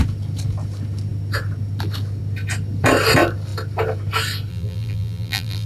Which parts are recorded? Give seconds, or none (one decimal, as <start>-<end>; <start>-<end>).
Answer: 0.0-4.5